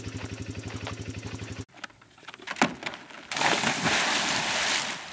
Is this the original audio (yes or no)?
yes